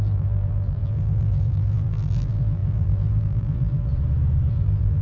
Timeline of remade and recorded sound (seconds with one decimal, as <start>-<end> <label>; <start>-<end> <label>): 0.0-3.9 remade; 3.9-4.5 recorded; 4.5-5.0 remade